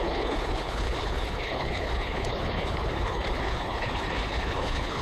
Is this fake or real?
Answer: fake